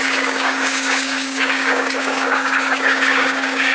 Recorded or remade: remade